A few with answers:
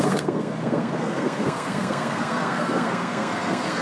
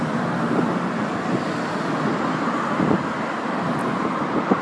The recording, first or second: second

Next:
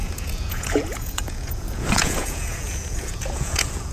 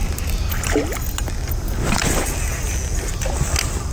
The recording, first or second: second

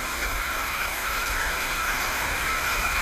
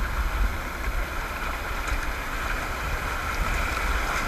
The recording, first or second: second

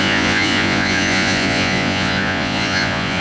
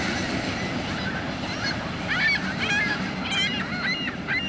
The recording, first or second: second